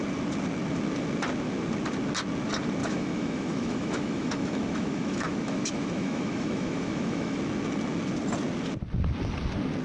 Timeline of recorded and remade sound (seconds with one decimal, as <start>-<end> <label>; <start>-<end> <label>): 0.0-2.8 recorded; 2.8-7.4 remade; 7.4-9.8 recorded